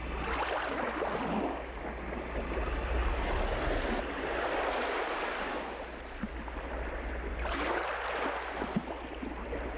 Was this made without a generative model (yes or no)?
yes